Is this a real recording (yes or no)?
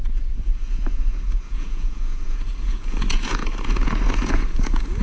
no